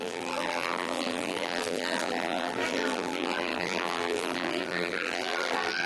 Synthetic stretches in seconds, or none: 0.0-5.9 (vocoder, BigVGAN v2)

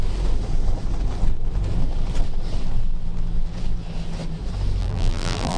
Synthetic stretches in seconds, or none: 4.8-5.6 (vocoder, BigVGAN v2)